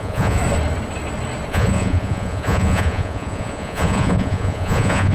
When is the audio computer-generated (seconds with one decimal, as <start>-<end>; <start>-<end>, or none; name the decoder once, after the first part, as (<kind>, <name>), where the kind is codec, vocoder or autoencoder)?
0.0-0.4 (vocoder, Vocos); 1.5-5.1

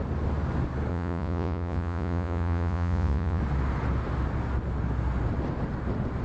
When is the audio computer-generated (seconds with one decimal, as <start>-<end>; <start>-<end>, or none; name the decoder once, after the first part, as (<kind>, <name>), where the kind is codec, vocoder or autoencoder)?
0.9-3.4 (vocoder, Vocos)

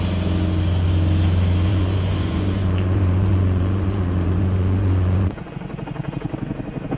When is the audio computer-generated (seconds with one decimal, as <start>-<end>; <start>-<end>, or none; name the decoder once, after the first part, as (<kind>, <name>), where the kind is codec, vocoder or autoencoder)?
1.7-5.5 (vocoder, Vocos)

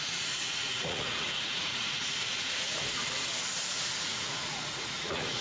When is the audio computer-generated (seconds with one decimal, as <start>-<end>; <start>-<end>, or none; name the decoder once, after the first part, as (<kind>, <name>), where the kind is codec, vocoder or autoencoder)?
0.0-2.8 (vocoder, Vocos); 4.0-5.4

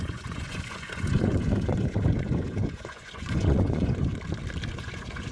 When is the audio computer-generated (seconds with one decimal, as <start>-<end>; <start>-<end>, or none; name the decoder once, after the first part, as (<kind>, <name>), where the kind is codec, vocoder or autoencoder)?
0.0-4.1 (vocoder, Vocos); 4.7-5.3

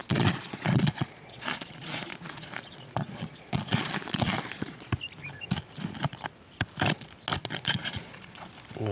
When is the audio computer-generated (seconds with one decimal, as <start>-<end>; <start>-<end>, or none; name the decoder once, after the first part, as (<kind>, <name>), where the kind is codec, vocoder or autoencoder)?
0.0-4.9 (vocoder, Vocos); 7.4-8.5

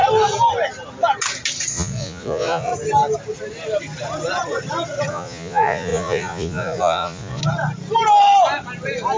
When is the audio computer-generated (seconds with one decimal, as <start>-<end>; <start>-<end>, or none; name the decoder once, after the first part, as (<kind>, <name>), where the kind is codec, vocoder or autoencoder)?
1.7-2.7 (vocoder, Vocos); 5.1-7.4